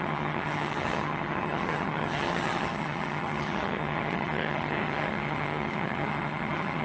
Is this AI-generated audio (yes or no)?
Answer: yes